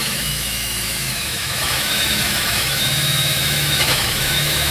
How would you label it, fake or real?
fake